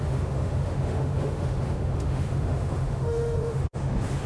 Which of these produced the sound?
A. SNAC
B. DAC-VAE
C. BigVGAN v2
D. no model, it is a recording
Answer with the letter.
B